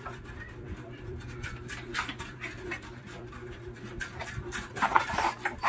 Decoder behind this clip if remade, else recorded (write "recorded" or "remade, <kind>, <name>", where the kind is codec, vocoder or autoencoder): remade, vocoder, BigVGAN v2